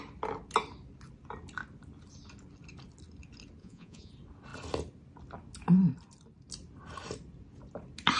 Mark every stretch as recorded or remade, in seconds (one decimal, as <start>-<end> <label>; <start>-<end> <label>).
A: 0.0-3.6 recorded; 3.6-4.1 remade; 4.1-8.2 recorded